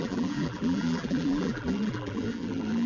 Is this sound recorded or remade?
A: remade